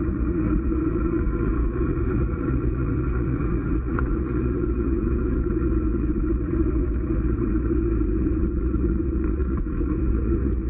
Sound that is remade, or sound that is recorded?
remade